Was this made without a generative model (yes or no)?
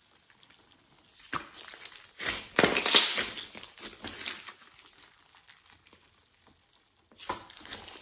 yes